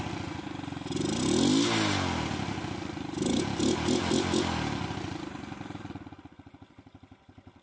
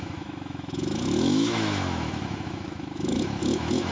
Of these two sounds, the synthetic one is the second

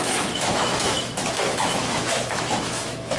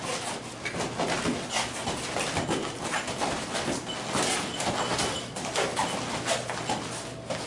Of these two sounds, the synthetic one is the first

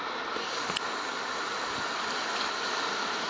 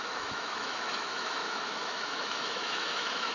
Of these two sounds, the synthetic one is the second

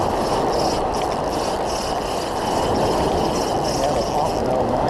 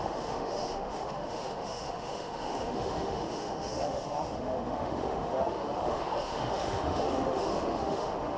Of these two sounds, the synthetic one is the second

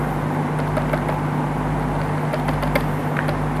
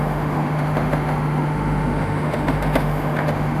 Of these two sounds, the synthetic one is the second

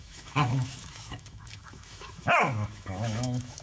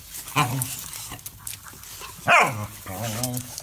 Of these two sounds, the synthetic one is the first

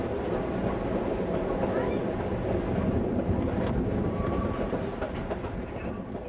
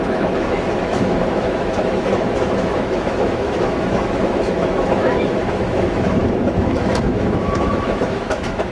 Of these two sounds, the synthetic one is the second